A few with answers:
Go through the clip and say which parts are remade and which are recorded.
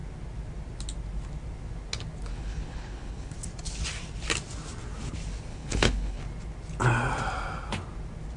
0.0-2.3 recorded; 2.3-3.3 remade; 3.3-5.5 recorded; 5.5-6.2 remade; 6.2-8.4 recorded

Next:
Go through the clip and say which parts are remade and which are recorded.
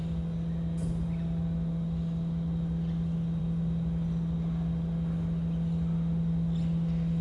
0.0-7.2 recorded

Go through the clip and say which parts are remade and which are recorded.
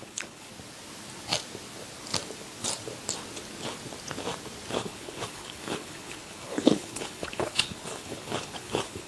0.0-0.5 remade; 0.5-4.7 recorded; 4.7-9.1 remade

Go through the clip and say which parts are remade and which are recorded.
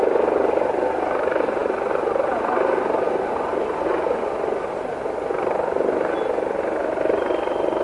0.0-7.8 recorded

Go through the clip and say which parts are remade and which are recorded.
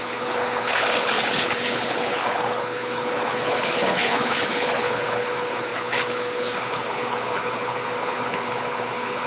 0.0-9.3 remade